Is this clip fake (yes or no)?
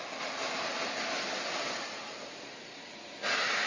no